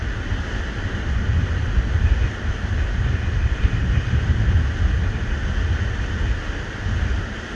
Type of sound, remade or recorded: recorded